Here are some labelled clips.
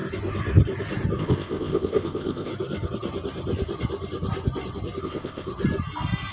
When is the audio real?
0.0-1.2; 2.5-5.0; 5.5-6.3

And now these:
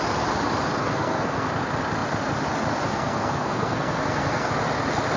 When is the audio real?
0.0-0.8; 1.5-2.9; 4.5-5.2

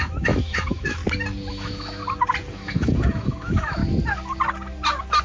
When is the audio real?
1.0-1.5; 2.0-2.5; 3.8-5.2

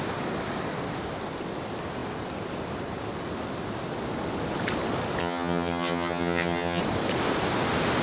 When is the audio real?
0.0-5.2; 6.8-8.0